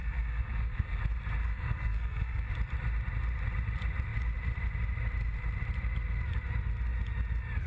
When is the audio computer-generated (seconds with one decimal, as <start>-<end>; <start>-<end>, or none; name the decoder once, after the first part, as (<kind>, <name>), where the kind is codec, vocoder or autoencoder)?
0.0-1.0 (codec, SNAC); 1.4-2.5